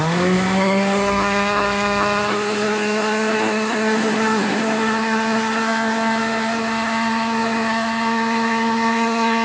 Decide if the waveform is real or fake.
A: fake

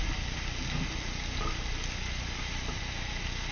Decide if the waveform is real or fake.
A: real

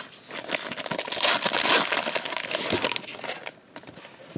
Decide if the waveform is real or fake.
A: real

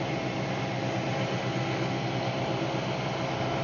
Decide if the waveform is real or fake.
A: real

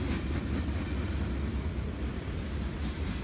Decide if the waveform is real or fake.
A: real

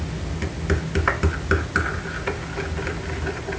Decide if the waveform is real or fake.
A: real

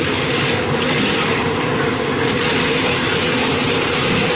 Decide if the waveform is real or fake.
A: real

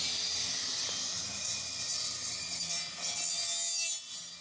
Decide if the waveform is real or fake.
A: real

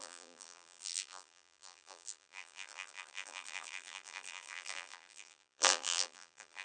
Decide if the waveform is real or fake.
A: fake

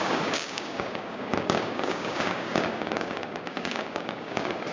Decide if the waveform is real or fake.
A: fake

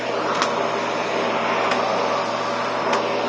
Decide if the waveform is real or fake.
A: real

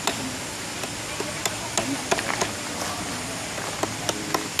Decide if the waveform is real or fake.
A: real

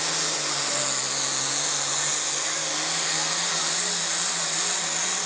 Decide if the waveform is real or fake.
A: real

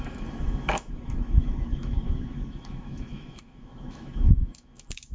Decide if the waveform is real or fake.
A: fake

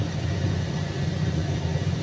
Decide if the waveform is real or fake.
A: fake